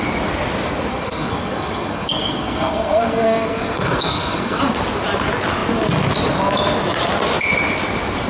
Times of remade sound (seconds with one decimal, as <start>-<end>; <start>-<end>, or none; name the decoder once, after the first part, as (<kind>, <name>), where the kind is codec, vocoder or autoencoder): 0.9-4.6 (codec, SNAC)